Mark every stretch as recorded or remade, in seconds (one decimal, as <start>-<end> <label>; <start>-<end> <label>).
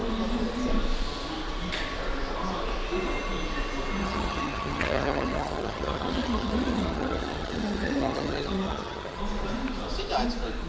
0.0-4.0 recorded; 4.0-9.2 remade; 9.2-10.7 recorded